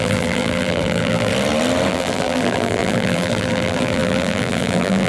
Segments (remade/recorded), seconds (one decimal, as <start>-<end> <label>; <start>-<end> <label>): 0.0-1.3 remade; 1.3-1.9 recorded; 1.9-5.1 remade